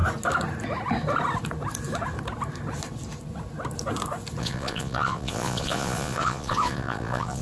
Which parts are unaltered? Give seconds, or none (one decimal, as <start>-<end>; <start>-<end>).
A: 0.0-4.4